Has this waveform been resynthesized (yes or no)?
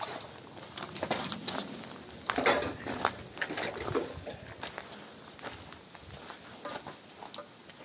no